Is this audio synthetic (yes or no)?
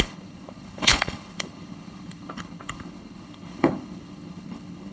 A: yes